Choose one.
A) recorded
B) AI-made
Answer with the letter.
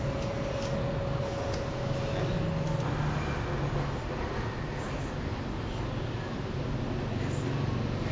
A